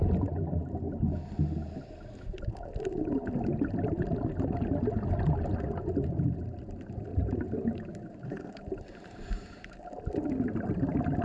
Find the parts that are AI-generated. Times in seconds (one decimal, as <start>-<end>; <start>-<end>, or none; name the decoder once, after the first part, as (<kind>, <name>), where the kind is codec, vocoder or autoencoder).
7.1-9.8 (vocoder, BigVGAN v2)